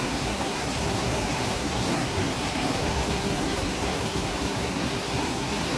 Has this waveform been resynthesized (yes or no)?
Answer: yes